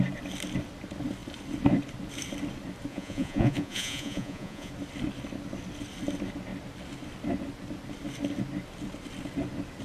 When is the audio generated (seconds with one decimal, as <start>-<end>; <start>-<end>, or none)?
2.9-4.7